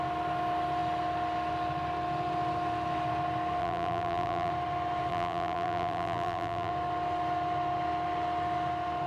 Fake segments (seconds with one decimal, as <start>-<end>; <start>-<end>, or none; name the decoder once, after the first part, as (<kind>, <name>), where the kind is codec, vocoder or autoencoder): 3.6-4.5 (vocoder, BigVGAN v2); 5.1-6.7